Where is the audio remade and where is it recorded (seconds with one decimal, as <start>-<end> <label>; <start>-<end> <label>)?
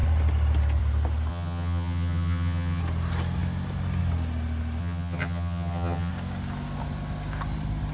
0.0-1.3 recorded; 1.3-2.8 remade; 2.8-4.8 recorded; 4.8-6.1 remade; 6.1-7.9 recorded